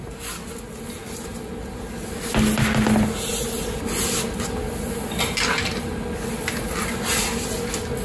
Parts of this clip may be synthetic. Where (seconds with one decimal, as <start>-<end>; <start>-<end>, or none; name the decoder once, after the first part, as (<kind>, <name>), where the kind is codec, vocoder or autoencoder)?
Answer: 1.0-2.3 (vocoder, BigVGAN v2)